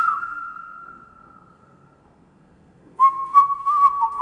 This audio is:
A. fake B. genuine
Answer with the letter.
A